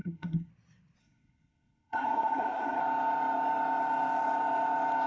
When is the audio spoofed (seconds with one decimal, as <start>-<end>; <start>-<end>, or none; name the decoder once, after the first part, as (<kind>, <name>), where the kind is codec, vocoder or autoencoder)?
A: 0.0-0.5 (codec, SNAC); 1.0-2.8

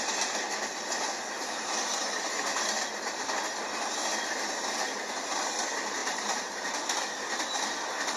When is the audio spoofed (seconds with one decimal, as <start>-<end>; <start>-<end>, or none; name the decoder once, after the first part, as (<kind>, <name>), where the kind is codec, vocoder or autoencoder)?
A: 6.0-7.0 (vocoder, BigVGAN v2)

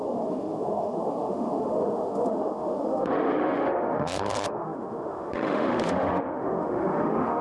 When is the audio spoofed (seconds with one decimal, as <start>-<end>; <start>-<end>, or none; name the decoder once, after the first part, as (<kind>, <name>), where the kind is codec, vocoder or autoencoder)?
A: 0.0-7.4 (autoencoder, DAC-VAE)

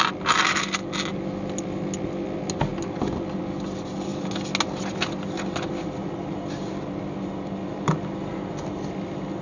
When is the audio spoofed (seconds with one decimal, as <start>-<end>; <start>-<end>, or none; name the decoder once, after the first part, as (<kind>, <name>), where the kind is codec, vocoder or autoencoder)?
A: none